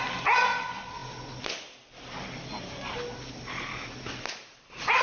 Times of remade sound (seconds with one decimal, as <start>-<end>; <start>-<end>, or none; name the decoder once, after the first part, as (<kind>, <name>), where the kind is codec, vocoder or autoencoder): none

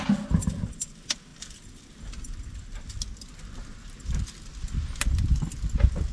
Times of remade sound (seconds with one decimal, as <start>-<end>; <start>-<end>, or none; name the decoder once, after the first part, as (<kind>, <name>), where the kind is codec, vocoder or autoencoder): none

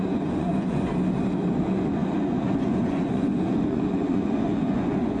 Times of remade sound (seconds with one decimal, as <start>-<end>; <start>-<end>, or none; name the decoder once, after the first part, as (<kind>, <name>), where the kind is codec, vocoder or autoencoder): 0.0-0.9 (vocoder, Vocos); 1.6-5.2

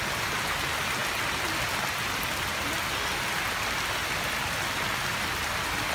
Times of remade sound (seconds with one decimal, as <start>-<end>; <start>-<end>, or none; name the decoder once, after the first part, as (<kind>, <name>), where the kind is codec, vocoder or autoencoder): none